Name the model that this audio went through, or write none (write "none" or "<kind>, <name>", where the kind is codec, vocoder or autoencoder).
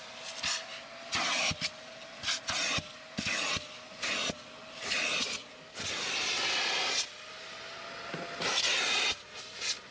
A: none